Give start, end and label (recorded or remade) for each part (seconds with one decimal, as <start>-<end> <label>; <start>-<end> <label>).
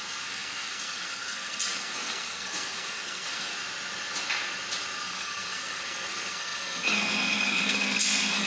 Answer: 0.0-3.5 remade; 3.5-5.1 recorded; 5.1-8.5 remade